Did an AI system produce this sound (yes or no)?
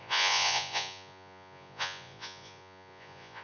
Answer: yes